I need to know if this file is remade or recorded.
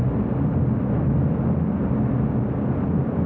recorded